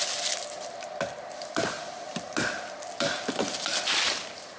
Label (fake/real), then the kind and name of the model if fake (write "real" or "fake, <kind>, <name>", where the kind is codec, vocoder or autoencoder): real